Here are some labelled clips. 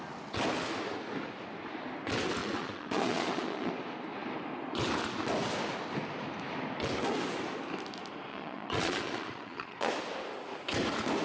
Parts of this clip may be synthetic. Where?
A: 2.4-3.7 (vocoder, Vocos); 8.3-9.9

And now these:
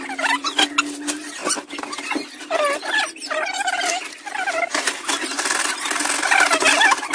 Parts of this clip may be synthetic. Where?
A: none

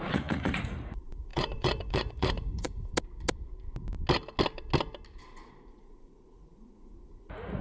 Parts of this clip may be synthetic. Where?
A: 0.0-2.9 (vocoder, Vocos); 5.7-7.6